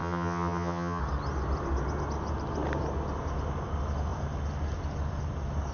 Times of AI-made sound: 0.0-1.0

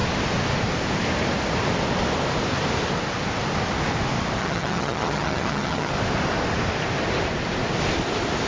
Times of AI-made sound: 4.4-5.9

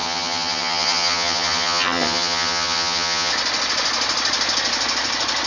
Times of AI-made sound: 0.0-3.3

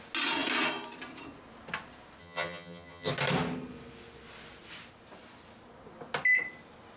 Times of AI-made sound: 2.2-3.1

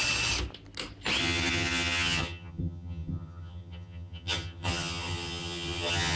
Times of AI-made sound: 1.2-6.2

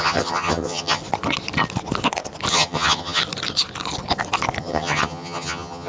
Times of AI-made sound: 0.0-1.0; 2.5-3.2; 4.6-5.9

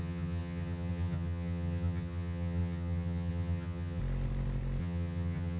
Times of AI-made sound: 0.0-4.0; 4.8-5.6